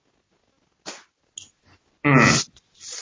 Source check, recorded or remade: recorded